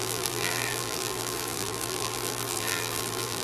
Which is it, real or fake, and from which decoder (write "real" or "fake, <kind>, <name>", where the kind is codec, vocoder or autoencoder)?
fake, vocoder, BigVGAN v2